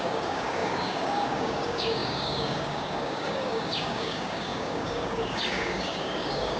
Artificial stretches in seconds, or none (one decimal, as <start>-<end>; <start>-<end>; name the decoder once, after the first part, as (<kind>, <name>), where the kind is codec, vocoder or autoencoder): 0.0-6.6 (codec, DAC)